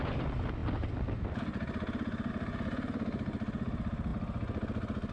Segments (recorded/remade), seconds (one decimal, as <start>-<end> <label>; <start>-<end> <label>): 0.0-5.1 recorded